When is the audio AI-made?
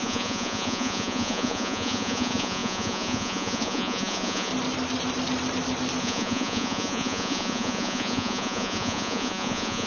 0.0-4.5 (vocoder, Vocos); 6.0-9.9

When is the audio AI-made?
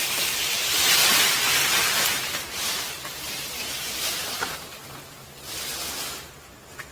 0.0-1.0 (vocoder, BigVGAN v2); 2.2-4.7